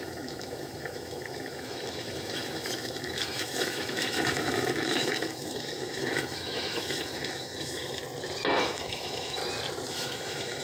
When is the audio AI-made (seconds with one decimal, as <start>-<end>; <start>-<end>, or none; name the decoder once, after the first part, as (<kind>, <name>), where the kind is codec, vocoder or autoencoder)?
0.0-8.0 (autoencoder, DAC-VAE); 8.6-9.4; 9.9-10.6